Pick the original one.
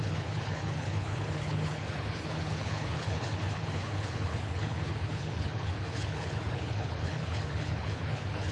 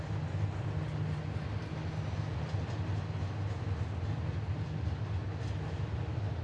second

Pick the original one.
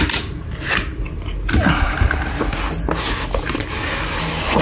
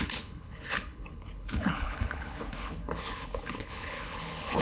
first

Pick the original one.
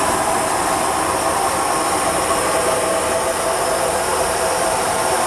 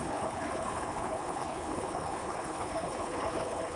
first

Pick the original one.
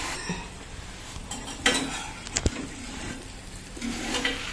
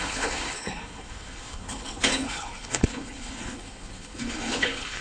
first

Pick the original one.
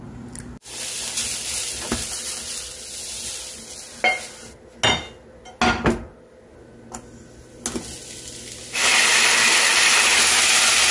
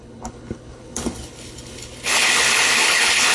first